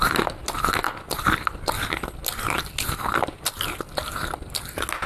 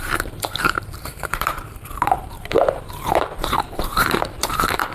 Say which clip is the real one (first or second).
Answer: first